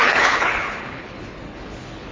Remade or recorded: remade